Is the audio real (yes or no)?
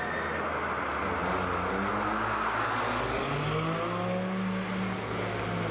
yes